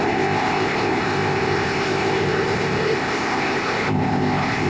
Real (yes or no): no